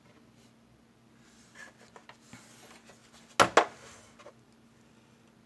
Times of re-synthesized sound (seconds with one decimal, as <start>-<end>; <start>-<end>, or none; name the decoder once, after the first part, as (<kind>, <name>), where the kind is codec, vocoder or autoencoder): none